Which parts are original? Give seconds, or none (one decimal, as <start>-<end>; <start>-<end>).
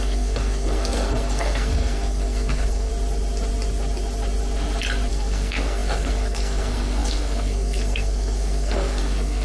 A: 2.9-5.1